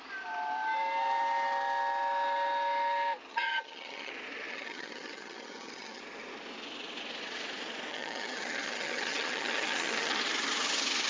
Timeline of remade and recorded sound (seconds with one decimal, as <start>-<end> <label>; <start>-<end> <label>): 0.0-3.3 recorded; 3.3-4.1 remade; 4.1-4.5 recorded; 4.5-6.0 remade; 6.0-7.9 recorded; 7.9-10.2 remade; 10.2-11.1 recorded